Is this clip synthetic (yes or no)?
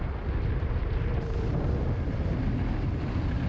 no